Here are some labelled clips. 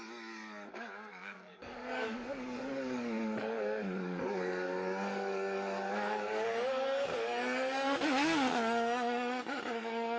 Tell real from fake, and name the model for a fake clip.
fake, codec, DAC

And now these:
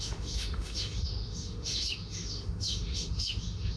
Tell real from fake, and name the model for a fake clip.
fake, autoencoder, DAC-VAE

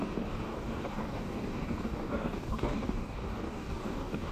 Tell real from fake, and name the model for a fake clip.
fake, codec, DAC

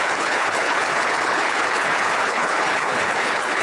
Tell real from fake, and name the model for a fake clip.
fake, codec, HILCodec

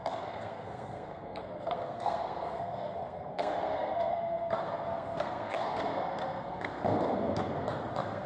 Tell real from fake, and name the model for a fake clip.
fake, codec, SNAC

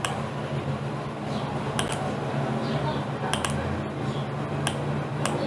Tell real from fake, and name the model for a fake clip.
real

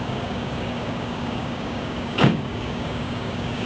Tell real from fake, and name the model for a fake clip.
fake, codec, DAC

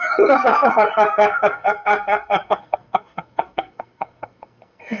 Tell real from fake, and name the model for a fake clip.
fake, codec, SNAC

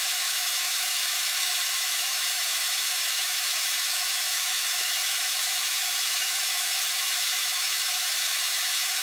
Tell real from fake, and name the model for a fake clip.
fake, autoencoder, DAC-VAE